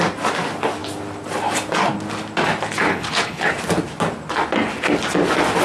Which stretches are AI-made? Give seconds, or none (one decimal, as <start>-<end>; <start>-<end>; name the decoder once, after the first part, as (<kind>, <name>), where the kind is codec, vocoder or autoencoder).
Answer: 2.9-3.5 (codec, HILCodec)